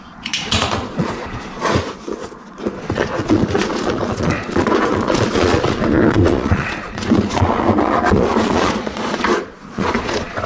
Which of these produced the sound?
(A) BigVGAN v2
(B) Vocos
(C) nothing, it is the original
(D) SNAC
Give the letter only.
B